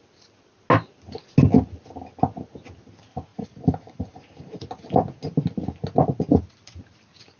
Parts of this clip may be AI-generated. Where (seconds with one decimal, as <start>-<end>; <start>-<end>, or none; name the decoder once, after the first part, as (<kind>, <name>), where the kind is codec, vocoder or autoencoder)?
3.3-4.6 (vocoder, BigVGAN v2)